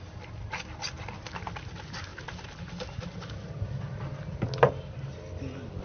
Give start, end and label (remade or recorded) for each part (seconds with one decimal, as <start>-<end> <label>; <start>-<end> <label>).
0.0-5.8 recorded